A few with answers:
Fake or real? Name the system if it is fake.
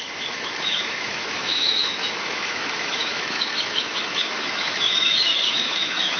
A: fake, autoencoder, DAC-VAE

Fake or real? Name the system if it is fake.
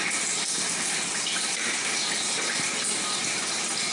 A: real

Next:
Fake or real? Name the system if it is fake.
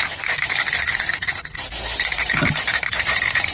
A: real